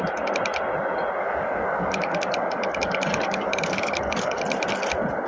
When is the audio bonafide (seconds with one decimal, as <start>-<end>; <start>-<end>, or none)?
0.0-1.2; 4.4-5.3